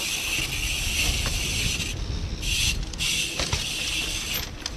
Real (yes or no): yes